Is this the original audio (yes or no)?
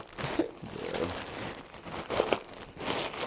yes